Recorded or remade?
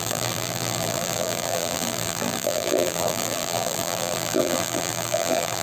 remade